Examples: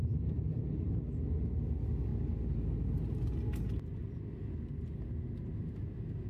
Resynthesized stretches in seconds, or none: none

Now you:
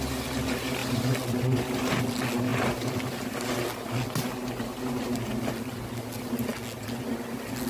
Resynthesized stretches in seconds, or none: none

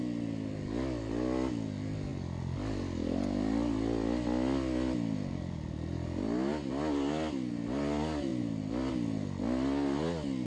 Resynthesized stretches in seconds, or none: none